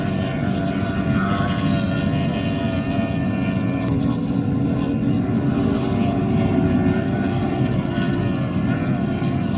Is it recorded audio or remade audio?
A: recorded